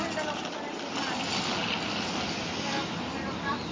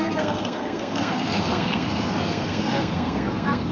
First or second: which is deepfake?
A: second